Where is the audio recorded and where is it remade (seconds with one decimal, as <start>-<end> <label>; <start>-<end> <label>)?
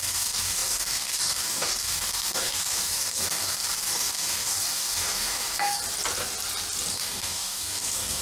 0.0-5.8 remade; 5.8-6.9 recorded; 6.9-8.2 remade